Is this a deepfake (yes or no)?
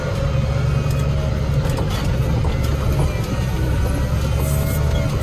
no